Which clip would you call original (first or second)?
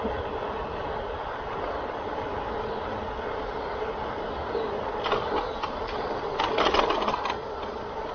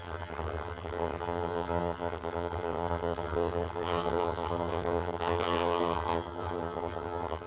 first